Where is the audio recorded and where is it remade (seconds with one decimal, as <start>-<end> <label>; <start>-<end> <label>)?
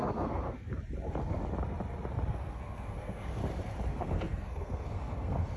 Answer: 0.0-0.7 remade; 0.7-2.3 recorded; 2.3-3.4 remade; 3.4-3.9 recorded; 3.9-5.6 remade